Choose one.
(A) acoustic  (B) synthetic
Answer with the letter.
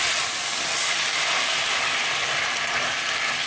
A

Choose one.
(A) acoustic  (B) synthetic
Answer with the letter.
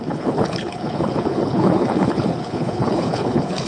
B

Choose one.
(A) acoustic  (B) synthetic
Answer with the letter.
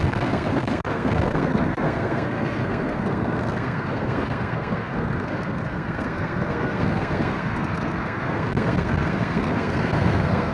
B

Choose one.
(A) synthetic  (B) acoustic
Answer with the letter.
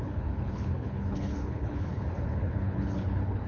A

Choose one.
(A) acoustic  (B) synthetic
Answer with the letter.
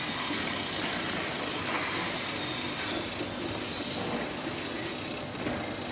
A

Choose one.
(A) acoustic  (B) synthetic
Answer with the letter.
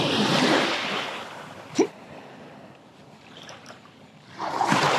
B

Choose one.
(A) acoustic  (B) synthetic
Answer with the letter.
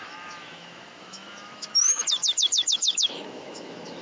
B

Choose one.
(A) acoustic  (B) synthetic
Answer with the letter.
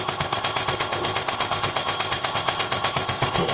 B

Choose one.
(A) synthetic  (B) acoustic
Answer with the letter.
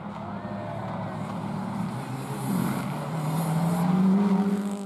B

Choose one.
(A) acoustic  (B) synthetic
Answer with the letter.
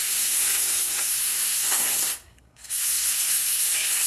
B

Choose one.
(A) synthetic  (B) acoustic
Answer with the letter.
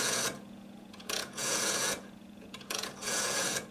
A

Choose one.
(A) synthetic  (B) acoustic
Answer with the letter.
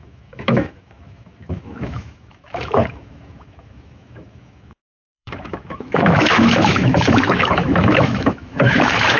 A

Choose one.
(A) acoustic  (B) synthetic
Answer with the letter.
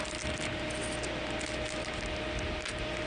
A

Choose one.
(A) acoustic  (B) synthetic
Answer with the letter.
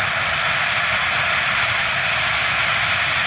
A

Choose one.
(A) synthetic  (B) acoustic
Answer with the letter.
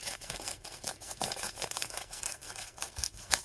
A